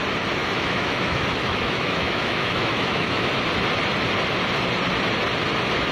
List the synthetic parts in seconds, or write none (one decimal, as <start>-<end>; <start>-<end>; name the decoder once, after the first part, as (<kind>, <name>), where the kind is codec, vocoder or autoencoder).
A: 0.4-3.3 (autoencoder, DAC-VAE)